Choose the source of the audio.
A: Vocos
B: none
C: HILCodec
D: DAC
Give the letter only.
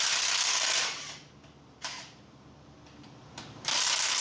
B